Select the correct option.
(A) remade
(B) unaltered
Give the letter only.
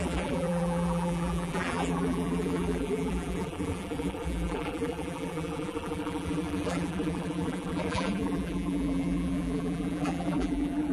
A